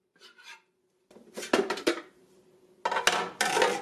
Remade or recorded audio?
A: recorded